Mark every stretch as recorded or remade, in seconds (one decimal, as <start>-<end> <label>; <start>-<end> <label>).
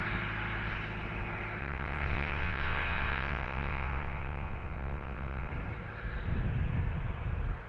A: 0.0-1.6 recorded; 1.6-5.5 remade; 5.5-7.7 recorded